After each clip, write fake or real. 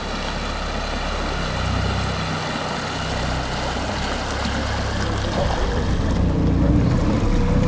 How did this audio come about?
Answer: real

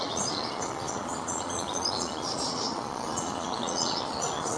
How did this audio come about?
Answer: fake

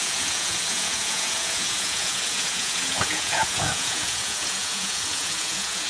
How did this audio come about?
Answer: fake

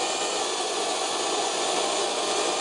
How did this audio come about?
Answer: fake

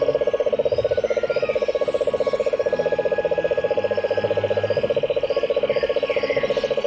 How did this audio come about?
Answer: real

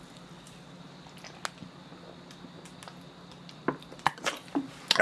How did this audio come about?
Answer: real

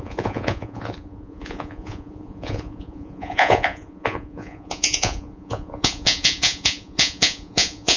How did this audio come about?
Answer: fake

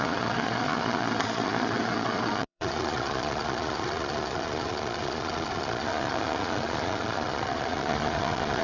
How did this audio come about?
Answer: fake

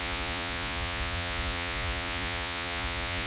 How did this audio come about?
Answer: fake